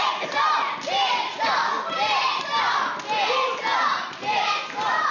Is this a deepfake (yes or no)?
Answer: no